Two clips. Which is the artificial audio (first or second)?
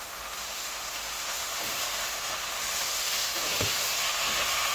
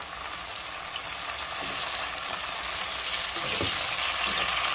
first